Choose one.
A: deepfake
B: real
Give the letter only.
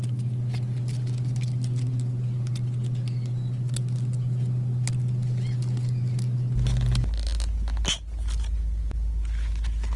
B